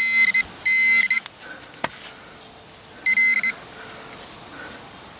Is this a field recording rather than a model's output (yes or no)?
yes